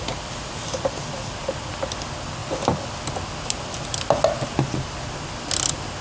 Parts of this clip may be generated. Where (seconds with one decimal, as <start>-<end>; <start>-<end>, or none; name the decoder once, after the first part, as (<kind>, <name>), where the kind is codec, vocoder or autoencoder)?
none

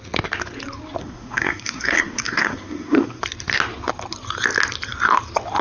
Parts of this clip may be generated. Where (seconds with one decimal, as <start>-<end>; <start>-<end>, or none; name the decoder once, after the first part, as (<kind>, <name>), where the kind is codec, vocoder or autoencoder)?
1.0-3.2 (codec, SNAC)